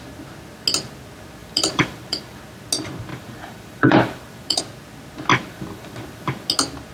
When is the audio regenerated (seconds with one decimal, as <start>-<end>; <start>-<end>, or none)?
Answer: 1.4-2.4; 3.1-4.6; 5.3-6.5